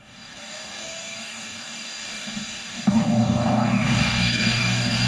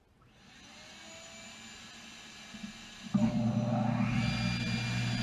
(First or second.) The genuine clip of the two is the second